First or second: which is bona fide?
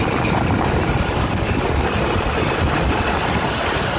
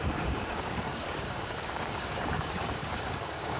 first